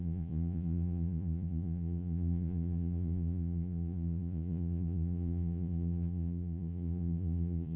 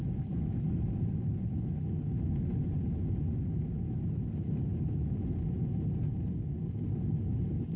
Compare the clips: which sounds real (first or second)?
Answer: second